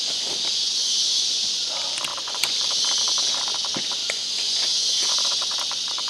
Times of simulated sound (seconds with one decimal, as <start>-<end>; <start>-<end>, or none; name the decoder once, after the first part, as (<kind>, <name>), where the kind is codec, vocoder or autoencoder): 0.6-1.6 (vocoder, Vocos); 2.1-2.8; 4.0-5.6